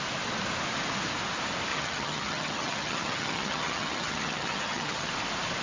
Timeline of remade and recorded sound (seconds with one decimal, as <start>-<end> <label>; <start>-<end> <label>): 0.0-1.7 recorded; 1.7-5.1 remade; 5.1-5.6 recorded